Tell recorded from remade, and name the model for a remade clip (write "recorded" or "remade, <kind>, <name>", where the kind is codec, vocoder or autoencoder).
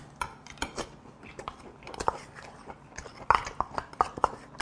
recorded